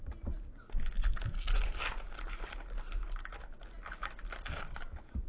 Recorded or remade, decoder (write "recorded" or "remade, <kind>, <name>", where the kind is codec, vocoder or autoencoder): recorded